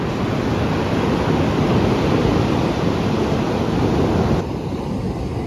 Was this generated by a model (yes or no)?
no